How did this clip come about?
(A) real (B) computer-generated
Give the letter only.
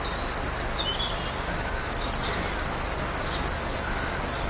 A